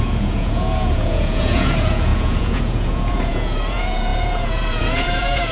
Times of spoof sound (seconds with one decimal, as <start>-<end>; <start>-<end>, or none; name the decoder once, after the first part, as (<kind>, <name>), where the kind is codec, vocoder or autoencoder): 0.0-5.5 (vocoder, Vocos)